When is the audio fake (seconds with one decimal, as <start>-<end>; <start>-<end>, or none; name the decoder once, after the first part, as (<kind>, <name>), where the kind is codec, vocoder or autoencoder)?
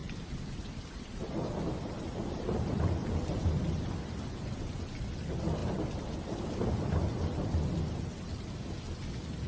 0.0-0.9 (vocoder, BigVGAN v2); 5.6-7.2